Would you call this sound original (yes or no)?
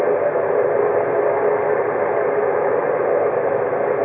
yes